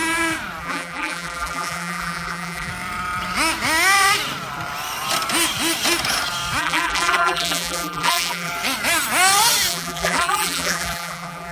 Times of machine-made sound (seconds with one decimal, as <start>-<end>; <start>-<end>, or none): 0.6-2.7; 6.6-8.5; 9.7-11.5